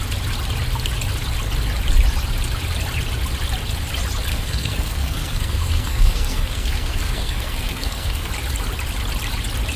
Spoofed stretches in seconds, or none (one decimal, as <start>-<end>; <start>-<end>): 4.3-8.3